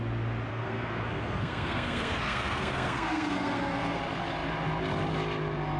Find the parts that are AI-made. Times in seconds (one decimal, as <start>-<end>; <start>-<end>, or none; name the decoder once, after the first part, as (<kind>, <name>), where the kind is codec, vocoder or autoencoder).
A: 0.5-4.0 (codec, SNAC)